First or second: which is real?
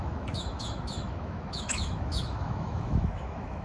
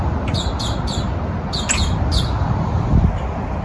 second